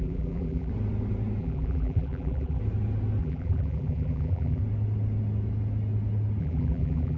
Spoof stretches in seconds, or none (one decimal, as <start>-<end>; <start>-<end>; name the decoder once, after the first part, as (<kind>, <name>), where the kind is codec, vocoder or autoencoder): 0.0-0.7 (vocoder, BigVGAN v2); 1.4-2.6; 3.2-4.6; 6.4-7.2

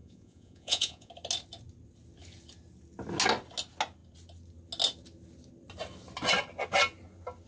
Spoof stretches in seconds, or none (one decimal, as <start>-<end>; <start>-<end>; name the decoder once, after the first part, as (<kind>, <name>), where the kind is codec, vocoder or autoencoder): 0.0-1.1 (vocoder, Vocos)

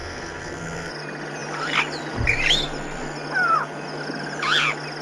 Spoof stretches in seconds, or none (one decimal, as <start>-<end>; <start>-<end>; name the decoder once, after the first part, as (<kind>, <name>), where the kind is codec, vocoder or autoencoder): 0.0-0.9 (codec, SNAC)